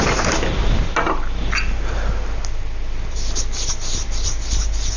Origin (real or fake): real